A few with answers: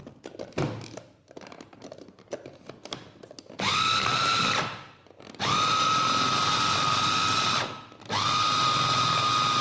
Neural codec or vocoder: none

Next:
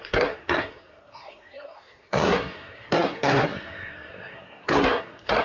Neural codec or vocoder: codec, SNAC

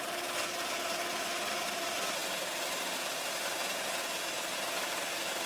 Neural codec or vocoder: none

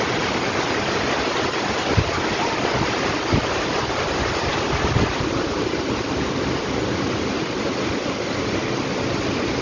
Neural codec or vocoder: none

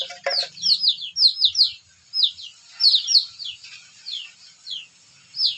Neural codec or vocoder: none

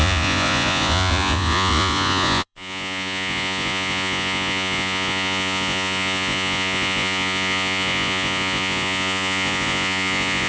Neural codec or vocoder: vocoder, Vocos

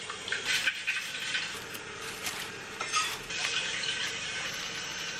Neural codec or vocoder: vocoder, BigVGAN v2